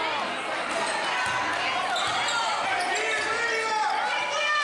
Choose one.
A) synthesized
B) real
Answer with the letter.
B